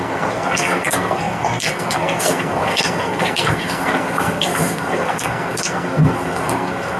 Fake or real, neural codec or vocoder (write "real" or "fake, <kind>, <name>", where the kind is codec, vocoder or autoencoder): fake, codec, SNAC